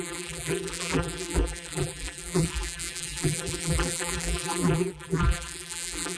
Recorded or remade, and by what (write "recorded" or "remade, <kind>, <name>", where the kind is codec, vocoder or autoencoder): remade, vocoder, BigVGAN v2